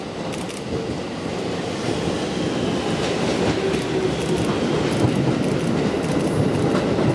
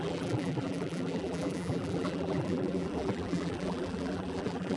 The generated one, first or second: second